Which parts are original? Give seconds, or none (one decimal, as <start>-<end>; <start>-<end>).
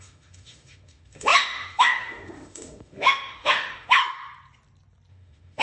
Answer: 4.0-5.1